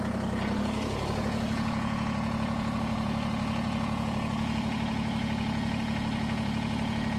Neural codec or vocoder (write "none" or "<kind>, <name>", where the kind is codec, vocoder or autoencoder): vocoder, Vocos